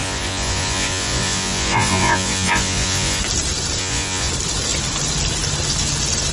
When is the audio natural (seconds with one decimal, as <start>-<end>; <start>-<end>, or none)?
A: 3.2-3.8; 4.3-6.3